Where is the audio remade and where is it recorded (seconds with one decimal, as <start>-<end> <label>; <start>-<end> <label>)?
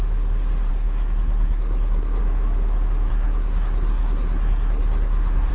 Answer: 0.0-0.7 recorded; 0.7-2.2 remade; 2.2-3.1 recorded; 3.1-5.5 remade